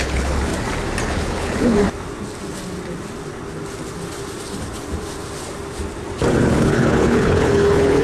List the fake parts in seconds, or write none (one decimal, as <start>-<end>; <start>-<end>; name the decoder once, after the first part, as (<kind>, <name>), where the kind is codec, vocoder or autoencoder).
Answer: 0.0-0.5 (codec, HILCodec); 1.1-1.8; 6.4-8.0